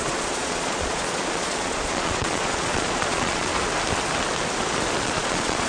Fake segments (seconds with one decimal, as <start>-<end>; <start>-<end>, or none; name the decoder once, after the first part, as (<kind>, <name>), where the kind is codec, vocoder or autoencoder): 0.0-3.5 (vocoder, Vocos); 5.0-5.7